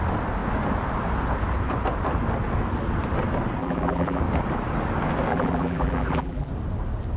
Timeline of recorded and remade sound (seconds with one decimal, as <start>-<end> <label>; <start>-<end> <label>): 0.0-3.6 recorded; 3.6-4.2 remade; 4.2-5.3 recorded; 5.3-6.5 remade; 6.5-7.2 recorded